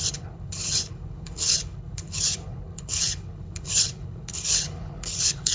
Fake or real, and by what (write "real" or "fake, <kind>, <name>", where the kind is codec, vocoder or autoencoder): fake, codec, HILCodec